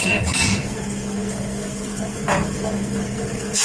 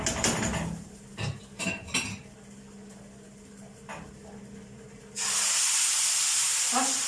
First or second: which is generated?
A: first